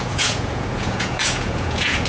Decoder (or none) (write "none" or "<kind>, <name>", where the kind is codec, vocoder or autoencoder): vocoder, Vocos